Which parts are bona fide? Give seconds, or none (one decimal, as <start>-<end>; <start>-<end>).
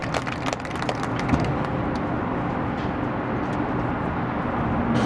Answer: 0.0-5.1